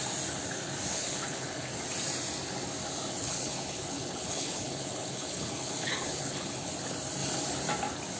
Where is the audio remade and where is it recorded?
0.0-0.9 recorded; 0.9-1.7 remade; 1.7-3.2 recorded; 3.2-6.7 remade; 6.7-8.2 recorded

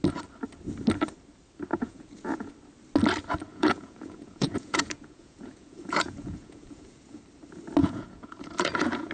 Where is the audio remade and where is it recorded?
0.0-1.7 recorded; 1.7-2.5 remade; 2.5-3.5 recorded; 3.5-7.2 remade; 7.2-7.8 recorded; 7.8-9.1 remade

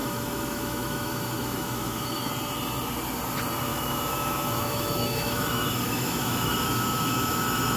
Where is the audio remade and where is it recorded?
0.0-2.3 remade; 2.3-3.7 recorded; 3.7-7.8 remade

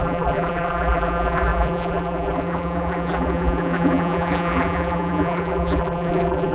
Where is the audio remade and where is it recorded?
0.0-6.5 remade

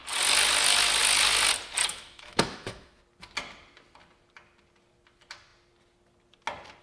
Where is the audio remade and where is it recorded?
0.0-1.9 recorded; 1.9-3.0 remade; 3.0-6.8 recorded